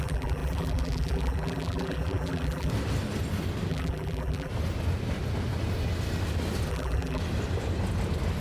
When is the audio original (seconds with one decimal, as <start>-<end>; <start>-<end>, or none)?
2.7-3.7; 4.5-6.7; 7.2-8.4